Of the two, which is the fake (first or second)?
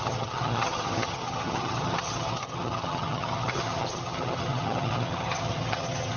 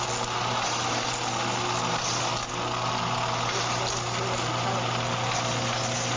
first